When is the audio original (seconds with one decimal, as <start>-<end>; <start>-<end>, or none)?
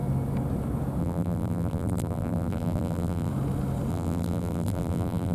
0.0-1.0; 3.3-3.9